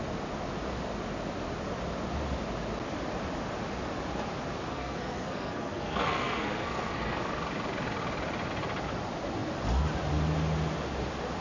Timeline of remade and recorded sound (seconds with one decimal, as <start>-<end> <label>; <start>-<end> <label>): 0.0-4.7 recorded; 4.7-7.4 remade; 7.4-11.4 recorded